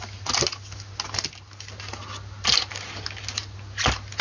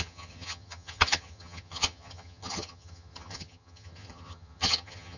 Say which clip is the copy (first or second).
second